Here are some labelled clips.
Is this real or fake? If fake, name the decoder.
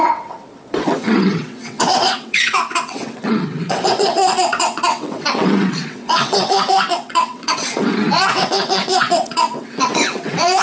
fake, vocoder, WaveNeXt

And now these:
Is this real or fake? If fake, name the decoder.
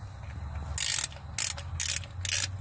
real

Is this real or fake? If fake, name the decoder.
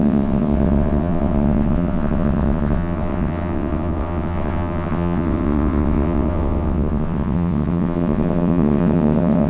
fake, vocoder, WaveNeXt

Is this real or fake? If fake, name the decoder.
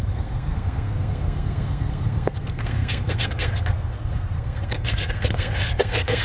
fake, codec, SNAC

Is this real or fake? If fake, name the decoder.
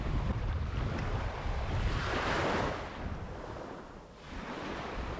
fake, vocoder, BigVGAN v2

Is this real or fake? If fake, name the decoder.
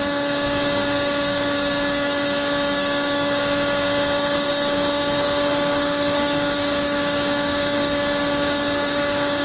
fake, codec, DAC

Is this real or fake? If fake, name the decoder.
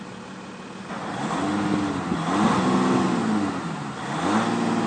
real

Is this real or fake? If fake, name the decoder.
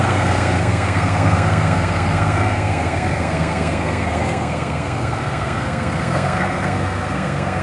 fake, codec, SNAC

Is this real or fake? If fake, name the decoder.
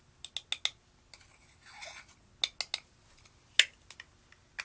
real